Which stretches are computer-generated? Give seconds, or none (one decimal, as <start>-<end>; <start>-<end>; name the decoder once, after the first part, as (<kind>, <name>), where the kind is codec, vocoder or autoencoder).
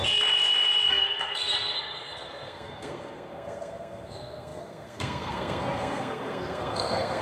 0.9-7.2 (codec, SNAC)